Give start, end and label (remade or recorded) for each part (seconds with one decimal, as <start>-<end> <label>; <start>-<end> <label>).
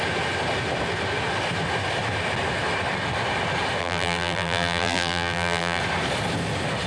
0.0-3.8 recorded; 3.8-5.8 remade; 5.8-6.9 recorded